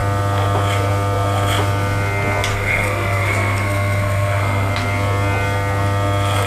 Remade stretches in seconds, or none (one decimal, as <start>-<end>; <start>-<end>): 2.5-4.7